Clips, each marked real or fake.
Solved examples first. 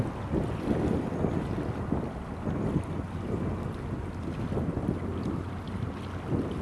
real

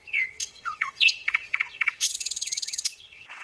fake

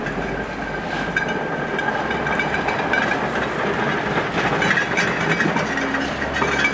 real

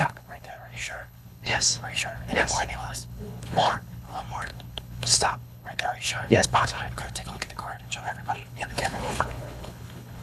fake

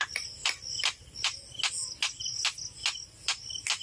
real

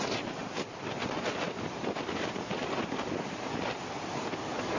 fake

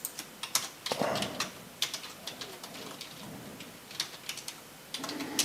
real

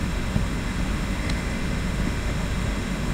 fake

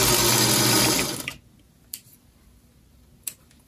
real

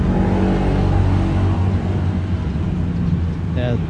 real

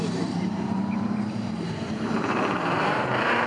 fake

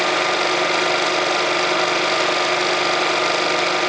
real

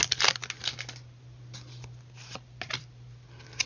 real